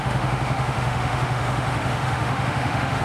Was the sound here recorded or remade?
remade